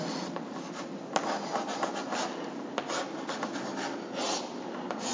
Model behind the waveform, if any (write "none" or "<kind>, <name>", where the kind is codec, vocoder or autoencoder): none